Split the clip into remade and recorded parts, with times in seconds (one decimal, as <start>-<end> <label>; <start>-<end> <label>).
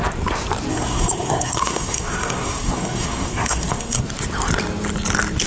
0.0-0.7 recorded; 0.7-4.0 remade; 4.0-5.5 recorded